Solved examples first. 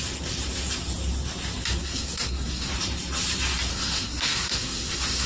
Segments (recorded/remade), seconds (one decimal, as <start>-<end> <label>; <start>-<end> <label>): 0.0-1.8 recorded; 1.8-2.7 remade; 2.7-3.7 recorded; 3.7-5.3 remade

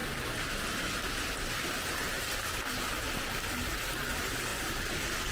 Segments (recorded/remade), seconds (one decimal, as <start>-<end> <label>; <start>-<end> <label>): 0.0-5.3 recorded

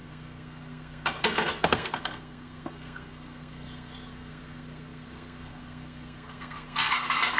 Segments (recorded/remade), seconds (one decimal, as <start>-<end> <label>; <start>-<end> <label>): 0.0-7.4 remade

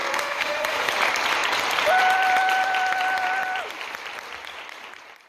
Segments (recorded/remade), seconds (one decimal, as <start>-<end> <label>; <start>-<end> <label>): 0.0-0.9 remade; 0.9-5.3 recorded

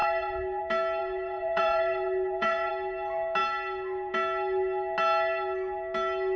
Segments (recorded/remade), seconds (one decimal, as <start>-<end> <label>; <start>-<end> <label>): 0.0-0.6 remade; 0.6-1.0 recorded; 1.0-2.7 remade; 2.7-6.4 recorded